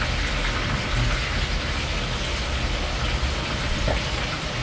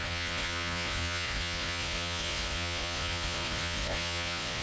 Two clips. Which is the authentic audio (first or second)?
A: first